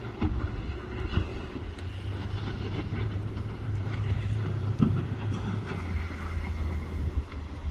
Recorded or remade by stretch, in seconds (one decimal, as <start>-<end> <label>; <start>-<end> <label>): 0.0-1.3 recorded; 1.3-5.6 remade; 5.6-7.7 recorded